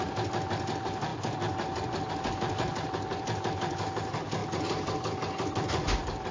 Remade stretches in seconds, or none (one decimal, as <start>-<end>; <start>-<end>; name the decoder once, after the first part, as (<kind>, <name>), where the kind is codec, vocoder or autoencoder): none